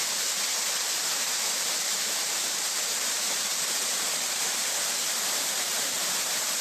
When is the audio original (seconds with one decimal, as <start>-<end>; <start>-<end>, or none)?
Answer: none